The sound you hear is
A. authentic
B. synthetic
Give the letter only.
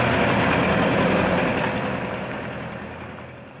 A